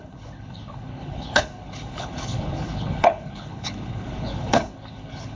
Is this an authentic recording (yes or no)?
no